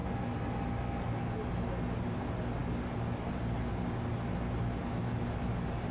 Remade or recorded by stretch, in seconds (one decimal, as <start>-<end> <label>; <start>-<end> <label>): 0.0-5.9 recorded